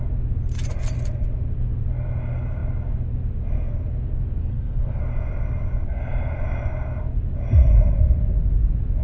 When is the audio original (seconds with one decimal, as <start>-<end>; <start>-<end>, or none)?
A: 0.0-4.4; 5.0-9.0